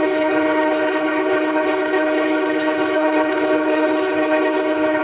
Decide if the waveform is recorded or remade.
remade